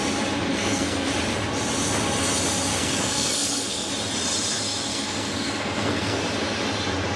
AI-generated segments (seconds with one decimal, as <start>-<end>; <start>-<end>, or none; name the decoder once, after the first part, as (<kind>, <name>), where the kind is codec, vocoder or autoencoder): 0.5-1.1 (codec, SNAC); 2.7-3.9; 4.9-6.2

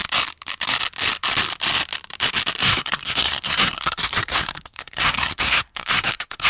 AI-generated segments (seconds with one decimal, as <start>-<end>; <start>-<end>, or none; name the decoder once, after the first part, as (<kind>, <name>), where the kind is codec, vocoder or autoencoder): 2.6-6.5 (codec, SNAC)

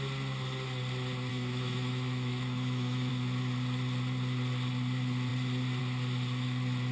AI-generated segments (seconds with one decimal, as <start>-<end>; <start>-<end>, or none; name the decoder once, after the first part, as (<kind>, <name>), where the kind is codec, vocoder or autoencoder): 1.3-3.1 (autoencoder, DAC-VAE)

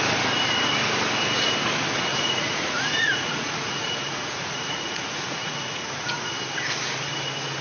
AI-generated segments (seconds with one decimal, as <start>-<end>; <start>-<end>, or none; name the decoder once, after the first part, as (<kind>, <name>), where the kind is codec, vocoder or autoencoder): 2.1-6.3 (vocoder, Vocos)

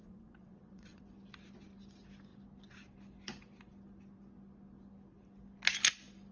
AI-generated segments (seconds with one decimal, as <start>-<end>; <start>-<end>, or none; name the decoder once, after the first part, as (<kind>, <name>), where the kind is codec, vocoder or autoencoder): 0.0-1.0 (vocoder, WaveNeXt)

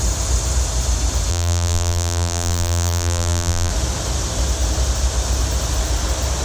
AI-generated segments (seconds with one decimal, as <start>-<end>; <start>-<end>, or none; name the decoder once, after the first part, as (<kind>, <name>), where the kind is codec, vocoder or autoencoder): 1.3-3.7 (vocoder, BigVGAN v2)

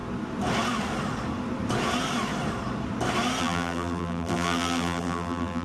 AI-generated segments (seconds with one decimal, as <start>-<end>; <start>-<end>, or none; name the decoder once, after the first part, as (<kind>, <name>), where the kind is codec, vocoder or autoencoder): 3.4-5.6 (vocoder, BigVGAN v2)